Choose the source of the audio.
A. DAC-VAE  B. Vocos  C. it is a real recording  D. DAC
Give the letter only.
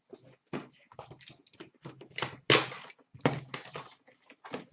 C